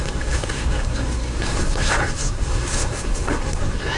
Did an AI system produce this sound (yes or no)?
yes